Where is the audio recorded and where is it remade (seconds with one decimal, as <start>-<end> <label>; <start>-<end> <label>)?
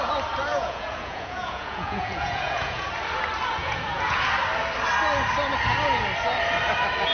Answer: 0.0-0.5 recorded; 0.5-2.9 remade; 2.9-3.6 recorded; 3.6-4.2 remade; 4.2-7.1 recorded